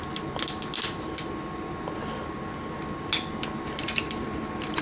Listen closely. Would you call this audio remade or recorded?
recorded